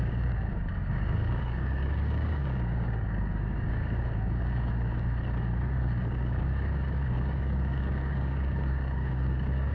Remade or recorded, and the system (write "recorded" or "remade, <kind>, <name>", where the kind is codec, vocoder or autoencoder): remade, codec, DAC